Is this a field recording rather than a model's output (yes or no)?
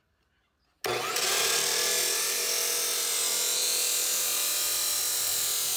yes